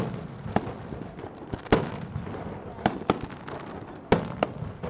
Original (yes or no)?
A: yes